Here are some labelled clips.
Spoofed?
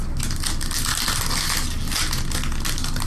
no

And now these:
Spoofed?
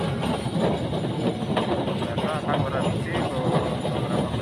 no